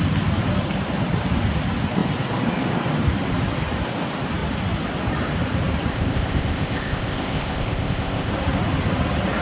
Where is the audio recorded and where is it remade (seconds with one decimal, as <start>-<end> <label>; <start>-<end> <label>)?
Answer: 0.0-5.9 recorded; 5.9-8.3 remade; 8.3-9.4 recorded